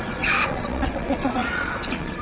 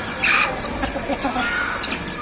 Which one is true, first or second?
second